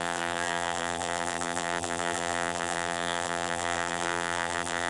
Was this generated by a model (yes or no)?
yes